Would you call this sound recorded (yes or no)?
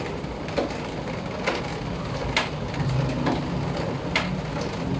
yes